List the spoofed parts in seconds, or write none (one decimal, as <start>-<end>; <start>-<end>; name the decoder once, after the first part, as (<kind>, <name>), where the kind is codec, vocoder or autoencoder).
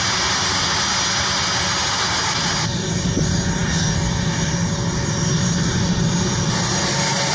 none